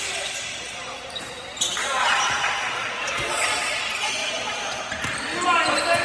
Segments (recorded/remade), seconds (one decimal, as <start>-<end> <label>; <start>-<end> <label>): 0.0-1.8 recorded; 1.8-3.8 remade; 3.8-4.2 recorded; 4.2-4.8 remade; 4.8-6.0 recorded